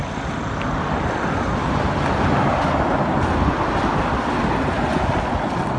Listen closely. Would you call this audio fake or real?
real